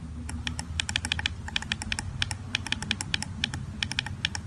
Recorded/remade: recorded